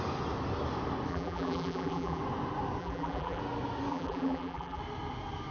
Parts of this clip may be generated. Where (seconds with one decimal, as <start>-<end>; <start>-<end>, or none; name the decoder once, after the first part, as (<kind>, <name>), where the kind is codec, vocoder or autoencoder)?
1.1-2.2 (vocoder, BigVGAN v2); 2.8-3.4; 3.9-4.8

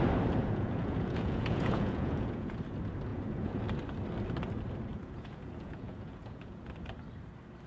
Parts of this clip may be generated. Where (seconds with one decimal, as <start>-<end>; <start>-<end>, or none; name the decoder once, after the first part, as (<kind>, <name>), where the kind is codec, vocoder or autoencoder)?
0.4-2.6 (vocoder, Vocos); 3.1-3.6; 4.9-6.6

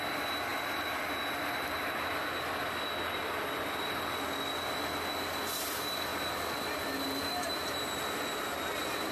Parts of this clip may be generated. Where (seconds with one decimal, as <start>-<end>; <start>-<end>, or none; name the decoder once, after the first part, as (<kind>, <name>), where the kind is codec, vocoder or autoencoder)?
6.1-6.6 (vocoder, BigVGAN v2)

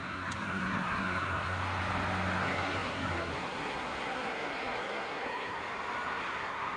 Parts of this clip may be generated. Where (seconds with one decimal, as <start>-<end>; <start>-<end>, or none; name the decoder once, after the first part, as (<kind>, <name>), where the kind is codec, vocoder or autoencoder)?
0.0-1.6 (codec, SNAC); 2.4-5.6; 6.2-6.8